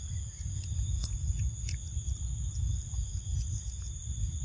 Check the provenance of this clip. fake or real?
real